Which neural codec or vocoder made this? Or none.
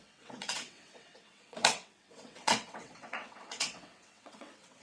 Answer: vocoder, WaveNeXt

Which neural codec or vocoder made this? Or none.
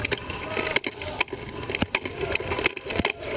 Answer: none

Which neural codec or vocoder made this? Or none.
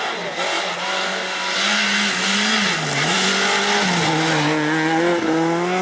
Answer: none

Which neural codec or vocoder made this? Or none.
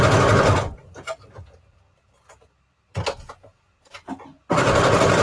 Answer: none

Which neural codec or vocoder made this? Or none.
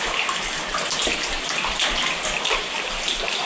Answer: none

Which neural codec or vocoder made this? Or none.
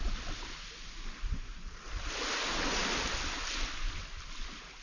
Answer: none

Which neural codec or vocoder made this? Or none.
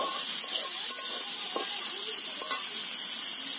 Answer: none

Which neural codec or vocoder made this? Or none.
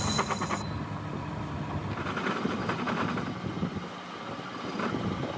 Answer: none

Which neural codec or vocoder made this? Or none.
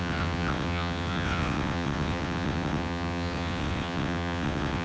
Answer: vocoder, WaveNeXt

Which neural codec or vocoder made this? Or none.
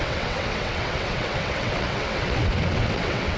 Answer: vocoder, WaveNeXt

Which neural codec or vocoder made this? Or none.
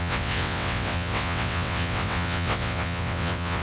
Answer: vocoder, WaveNeXt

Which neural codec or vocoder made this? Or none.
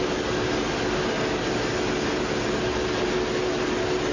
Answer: none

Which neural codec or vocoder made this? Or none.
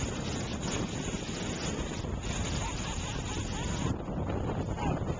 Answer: none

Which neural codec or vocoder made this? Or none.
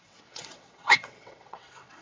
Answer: vocoder, WaveNeXt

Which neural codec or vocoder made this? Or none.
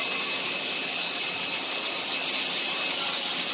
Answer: none